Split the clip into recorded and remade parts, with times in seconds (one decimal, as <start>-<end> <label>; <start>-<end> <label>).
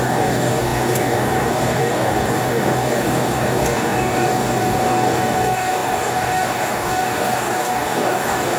0.0-8.6 remade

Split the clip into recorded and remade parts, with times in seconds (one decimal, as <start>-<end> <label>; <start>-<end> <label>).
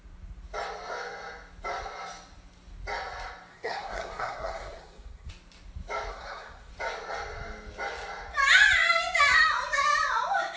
0.0-3.5 recorded; 3.5-5.3 remade; 5.3-6.1 recorded; 6.1-6.7 remade; 6.7-10.6 recorded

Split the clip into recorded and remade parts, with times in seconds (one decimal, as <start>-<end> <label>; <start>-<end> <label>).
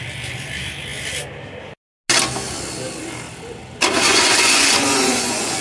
0.0-4.1 recorded; 4.1-5.6 remade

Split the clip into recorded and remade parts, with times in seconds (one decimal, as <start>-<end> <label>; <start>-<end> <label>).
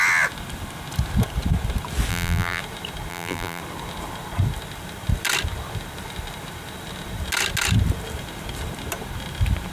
0.0-2.1 recorded; 2.1-2.6 remade; 2.6-3.1 recorded; 3.1-3.6 remade; 3.6-9.7 recorded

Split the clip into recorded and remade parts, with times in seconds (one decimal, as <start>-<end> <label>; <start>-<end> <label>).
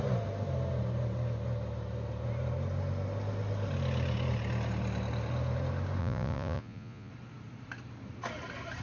0.0-6.0 recorded; 6.0-7.1 remade; 7.1-8.8 recorded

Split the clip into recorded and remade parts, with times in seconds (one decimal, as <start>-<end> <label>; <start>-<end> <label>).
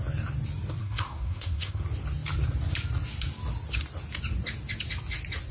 0.0-0.8 recorded; 0.8-1.8 remade; 1.8-5.5 recorded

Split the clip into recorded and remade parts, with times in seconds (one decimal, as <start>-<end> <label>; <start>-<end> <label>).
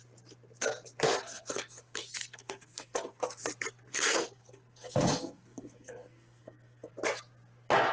0.0-1.2 recorded; 1.2-3.4 remade; 3.4-3.9 recorded; 3.9-6.9 remade; 6.9-7.9 recorded